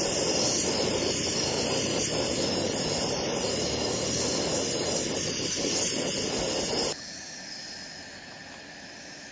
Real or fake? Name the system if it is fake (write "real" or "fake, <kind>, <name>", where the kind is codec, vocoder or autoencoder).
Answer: real